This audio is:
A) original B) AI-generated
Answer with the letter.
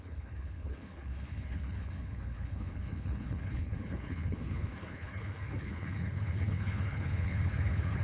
B